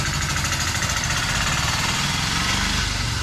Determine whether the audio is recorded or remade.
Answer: recorded